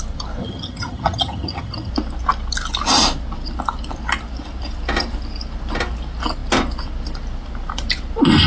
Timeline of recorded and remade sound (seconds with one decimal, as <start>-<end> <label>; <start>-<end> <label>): 0.0-0.4 recorded; 0.4-1.9 remade; 1.9-8.5 recorded